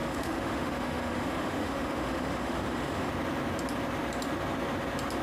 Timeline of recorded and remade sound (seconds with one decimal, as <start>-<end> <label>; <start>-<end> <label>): 0.0-3.1 remade; 3.1-5.2 recorded